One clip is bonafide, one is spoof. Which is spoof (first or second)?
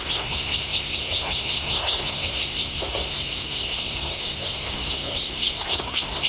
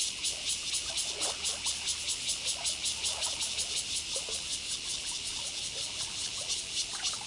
first